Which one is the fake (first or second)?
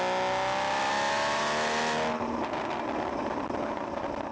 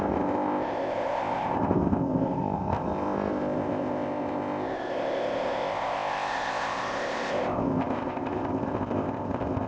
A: second